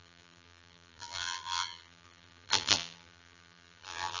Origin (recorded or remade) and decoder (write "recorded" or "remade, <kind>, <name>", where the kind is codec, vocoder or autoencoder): remade, vocoder, BigVGAN v2